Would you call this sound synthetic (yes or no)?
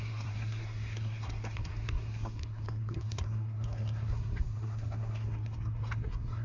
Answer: yes